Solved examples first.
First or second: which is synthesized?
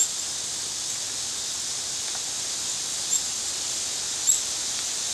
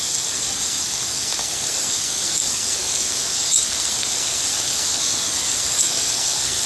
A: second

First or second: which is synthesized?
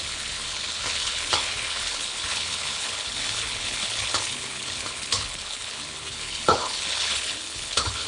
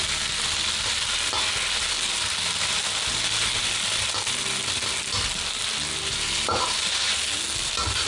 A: first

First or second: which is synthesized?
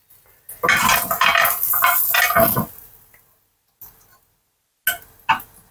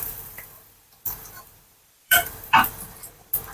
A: second